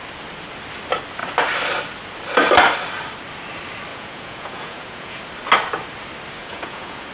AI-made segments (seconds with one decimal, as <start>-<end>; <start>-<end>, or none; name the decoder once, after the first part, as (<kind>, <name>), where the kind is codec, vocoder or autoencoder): 3.9-5.2 (vocoder, Vocos); 6.4-7.1